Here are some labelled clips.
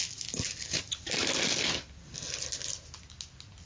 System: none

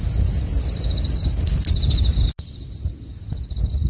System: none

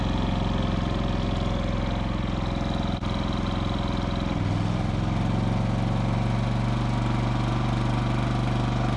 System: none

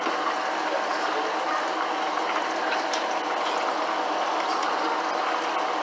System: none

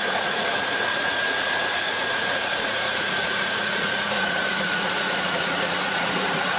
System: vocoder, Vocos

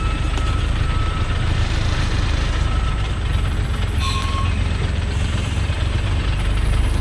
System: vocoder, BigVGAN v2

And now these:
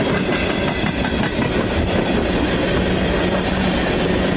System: none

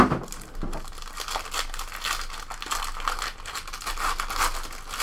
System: none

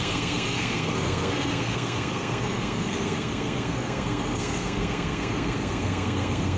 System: codec, SNAC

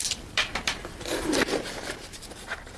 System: vocoder, BigVGAN v2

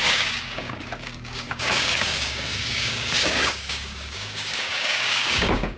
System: codec, DAC